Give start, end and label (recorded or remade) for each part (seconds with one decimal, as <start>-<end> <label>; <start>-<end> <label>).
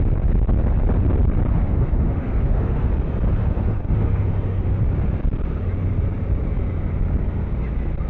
0.0-1.5 recorded; 1.5-2.9 remade; 2.9-3.4 recorded; 3.4-4.8 remade; 4.8-8.1 recorded